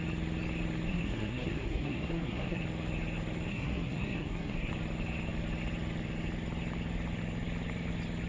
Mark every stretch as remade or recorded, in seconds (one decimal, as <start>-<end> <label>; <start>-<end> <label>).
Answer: 0.0-0.9 recorded; 0.9-2.6 remade; 2.6-3.5 recorded; 3.5-4.7 remade; 4.7-8.3 recorded